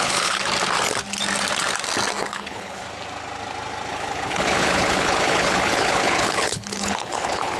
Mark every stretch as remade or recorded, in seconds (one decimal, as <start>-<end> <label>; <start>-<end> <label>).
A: 0.0-0.4 remade; 0.4-2.3 recorded; 2.3-2.8 remade; 2.8-3.9 recorded; 3.9-7.6 remade